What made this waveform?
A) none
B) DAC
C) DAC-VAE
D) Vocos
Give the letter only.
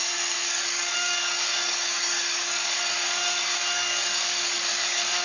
B